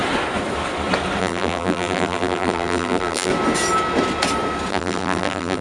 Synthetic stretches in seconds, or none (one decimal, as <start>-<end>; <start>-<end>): 1.2-3.3; 4.7-5.6